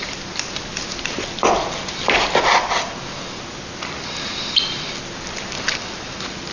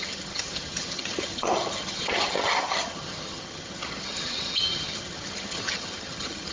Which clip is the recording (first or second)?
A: first